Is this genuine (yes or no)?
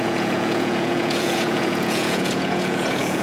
no